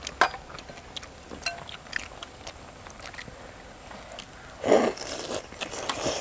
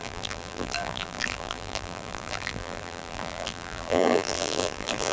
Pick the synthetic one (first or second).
second